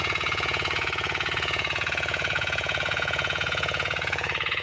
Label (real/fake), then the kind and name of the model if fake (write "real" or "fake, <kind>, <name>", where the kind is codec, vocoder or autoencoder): fake, vocoder, Vocos